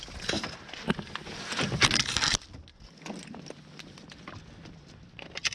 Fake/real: real